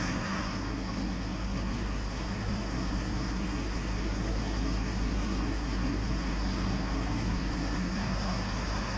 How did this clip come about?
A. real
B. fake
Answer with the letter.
B